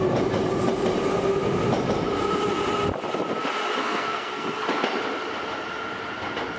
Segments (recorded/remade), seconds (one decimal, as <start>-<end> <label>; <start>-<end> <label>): 0.0-3.8 recorded; 3.8-4.6 remade; 4.6-6.6 recorded